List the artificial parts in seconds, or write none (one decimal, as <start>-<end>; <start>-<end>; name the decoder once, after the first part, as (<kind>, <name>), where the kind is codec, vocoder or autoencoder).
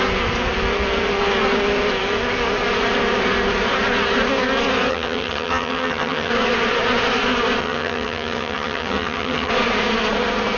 4.9-6.3 (vocoder, HiFi-GAN); 7.6-9.5